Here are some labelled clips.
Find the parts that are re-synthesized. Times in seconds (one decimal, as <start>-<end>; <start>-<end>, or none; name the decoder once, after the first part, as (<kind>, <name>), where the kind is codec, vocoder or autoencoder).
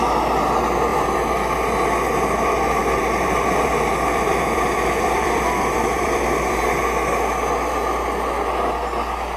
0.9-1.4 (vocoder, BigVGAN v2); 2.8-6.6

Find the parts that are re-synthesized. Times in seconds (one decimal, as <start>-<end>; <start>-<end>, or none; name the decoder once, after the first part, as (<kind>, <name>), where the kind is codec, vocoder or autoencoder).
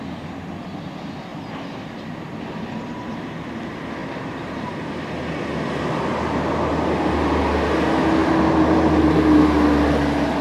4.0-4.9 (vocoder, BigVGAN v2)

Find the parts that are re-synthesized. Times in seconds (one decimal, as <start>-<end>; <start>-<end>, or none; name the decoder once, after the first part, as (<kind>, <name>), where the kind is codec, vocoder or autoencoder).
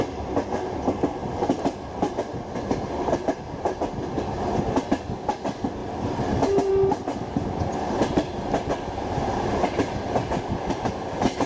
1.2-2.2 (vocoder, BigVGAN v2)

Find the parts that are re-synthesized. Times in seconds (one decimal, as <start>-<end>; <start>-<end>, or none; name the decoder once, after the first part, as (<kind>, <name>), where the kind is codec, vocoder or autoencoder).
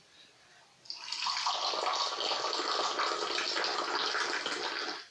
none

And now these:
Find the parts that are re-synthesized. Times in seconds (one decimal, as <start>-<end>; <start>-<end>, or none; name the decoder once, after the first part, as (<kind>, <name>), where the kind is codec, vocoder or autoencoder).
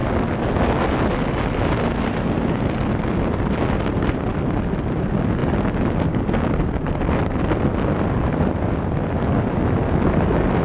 none